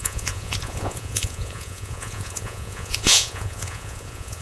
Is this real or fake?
fake